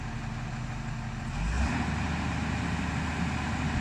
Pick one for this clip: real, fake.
real